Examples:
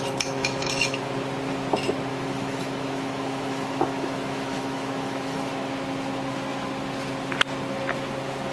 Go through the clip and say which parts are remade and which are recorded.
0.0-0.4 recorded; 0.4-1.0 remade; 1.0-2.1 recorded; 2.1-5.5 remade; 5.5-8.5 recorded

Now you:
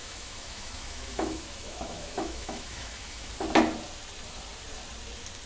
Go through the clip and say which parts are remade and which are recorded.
0.0-3.3 remade; 3.3-5.5 recorded